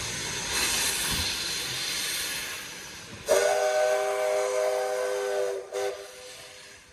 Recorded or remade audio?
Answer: recorded